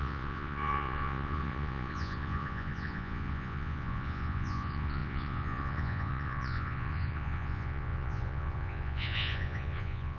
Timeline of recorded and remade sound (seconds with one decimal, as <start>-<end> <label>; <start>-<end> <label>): 0.0-10.2 remade